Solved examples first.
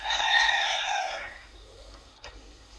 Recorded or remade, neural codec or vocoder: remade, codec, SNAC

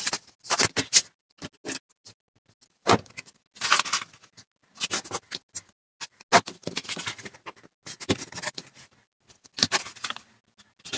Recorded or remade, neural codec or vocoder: recorded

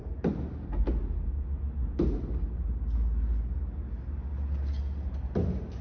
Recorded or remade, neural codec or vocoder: recorded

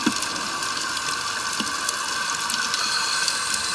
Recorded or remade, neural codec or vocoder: recorded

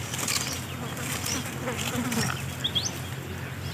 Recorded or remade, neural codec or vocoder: recorded